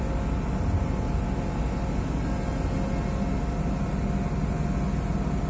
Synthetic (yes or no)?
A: no